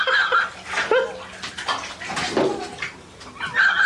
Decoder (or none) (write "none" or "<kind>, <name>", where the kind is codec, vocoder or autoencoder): none